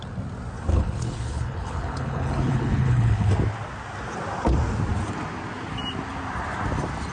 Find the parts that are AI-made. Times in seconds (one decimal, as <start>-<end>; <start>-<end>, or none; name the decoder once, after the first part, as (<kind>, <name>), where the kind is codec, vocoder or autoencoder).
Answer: 0.7-3.3 (codec, HILCodec)